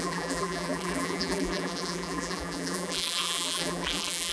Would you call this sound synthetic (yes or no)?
yes